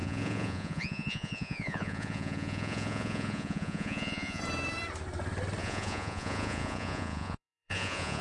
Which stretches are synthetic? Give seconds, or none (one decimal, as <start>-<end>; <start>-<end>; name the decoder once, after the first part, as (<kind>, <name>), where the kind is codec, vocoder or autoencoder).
0.0-4.4 (vocoder, Vocos); 5.6-8.2